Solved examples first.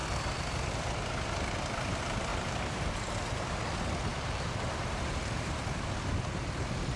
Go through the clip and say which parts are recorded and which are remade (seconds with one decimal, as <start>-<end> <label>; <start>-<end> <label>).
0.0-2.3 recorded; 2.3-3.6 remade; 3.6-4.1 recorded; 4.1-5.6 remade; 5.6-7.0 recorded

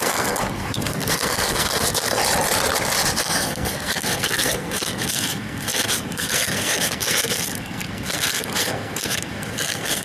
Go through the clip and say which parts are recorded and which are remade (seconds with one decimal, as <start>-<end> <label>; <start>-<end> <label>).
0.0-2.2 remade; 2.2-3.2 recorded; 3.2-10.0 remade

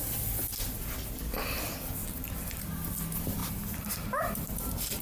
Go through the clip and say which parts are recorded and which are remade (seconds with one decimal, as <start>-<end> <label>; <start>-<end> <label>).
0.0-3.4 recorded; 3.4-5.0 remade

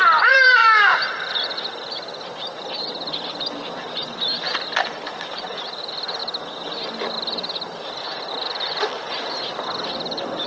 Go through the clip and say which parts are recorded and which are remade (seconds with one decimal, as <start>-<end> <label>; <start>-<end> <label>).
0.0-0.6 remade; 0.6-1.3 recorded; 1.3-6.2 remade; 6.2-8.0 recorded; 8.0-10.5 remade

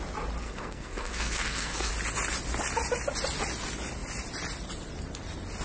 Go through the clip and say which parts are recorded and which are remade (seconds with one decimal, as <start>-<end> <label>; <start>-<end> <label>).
0.0-0.4 recorded; 0.4-1.9 remade; 1.9-5.6 recorded